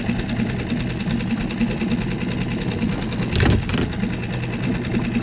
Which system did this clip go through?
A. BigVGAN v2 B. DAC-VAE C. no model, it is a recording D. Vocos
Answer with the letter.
C